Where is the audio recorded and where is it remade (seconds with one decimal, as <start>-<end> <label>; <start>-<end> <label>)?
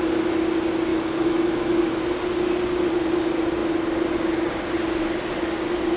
0.0-0.9 recorded; 0.9-2.1 remade; 2.1-6.0 recorded